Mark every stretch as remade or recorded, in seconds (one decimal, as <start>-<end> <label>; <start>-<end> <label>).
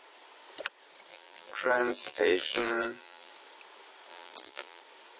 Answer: 0.0-1.1 recorded; 1.1-3.3 remade; 3.3-4.1 recorded; 4.1-4.8 remade; 4.8-5.2 recorded